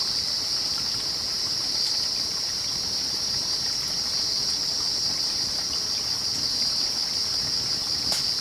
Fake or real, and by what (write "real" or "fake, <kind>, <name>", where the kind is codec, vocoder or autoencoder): real